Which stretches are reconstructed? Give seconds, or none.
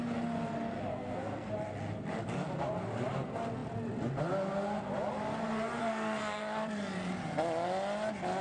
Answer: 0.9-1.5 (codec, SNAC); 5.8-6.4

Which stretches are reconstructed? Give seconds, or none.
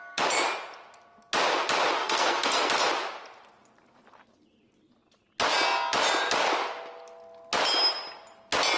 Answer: 2.0-2.7 (codec, SNAC)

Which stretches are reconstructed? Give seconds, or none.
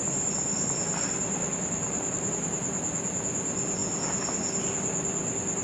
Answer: 0.0-2.3 (vocoder, BigVGAN v2)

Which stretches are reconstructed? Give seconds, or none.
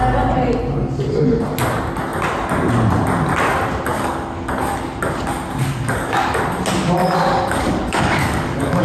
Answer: 3.9-4.5 (codec, DAC); 5.6-6.4; 7.0-8.8